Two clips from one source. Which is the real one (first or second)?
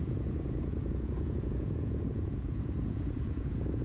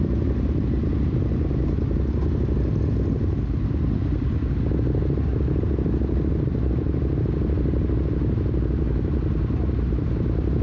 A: second